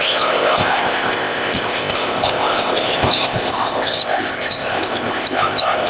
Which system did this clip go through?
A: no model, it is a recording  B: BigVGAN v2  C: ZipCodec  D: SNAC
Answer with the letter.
C